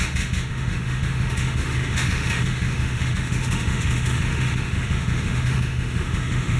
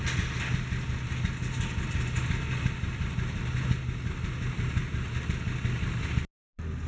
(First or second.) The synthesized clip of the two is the first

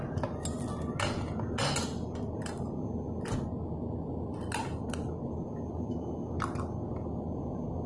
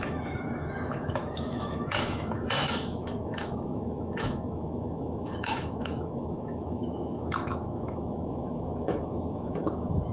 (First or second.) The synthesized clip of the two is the second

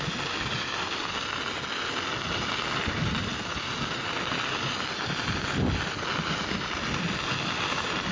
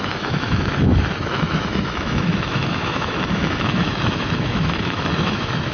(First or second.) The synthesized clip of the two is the second